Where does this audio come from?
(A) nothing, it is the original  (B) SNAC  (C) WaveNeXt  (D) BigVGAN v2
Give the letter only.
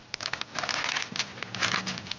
D